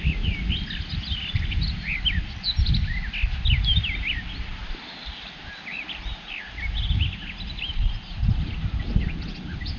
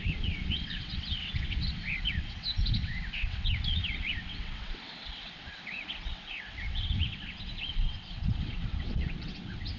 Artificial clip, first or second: second